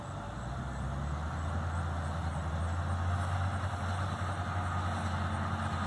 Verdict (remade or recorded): recorded